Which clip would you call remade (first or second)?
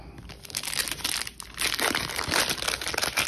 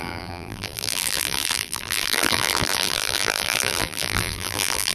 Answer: second